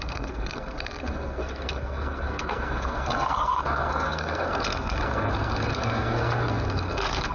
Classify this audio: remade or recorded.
remade